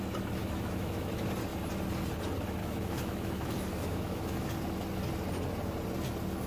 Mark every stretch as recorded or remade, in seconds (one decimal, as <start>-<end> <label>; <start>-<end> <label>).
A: 0.0-0.4 recorded; 0.4-1.1 remade; 1.1-2.6 recorded; 2.6-4.5 remade; 4.5-6.5 recorded